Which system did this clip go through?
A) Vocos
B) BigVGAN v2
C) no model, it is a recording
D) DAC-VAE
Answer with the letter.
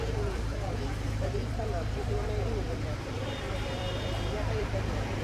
B